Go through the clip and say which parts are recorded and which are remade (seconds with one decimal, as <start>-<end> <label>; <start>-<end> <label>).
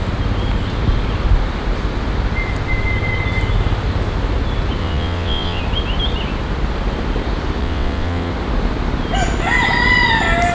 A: 0.0-4.8 recorded; 4.8-5.6 remade; 5.6-7.6 recorded; 7.6-8.3 remade; 8.3-10.5 recorded